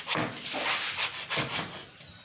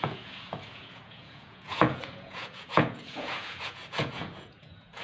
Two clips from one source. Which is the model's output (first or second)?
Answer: second